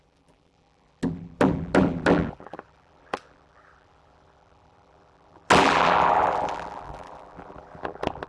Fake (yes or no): yes